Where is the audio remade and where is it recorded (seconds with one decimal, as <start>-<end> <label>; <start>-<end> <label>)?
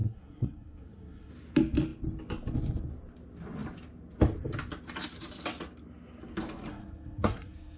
0.0-1.3 remade; 1.3-6.7 recorded; 6.7-7.8 remade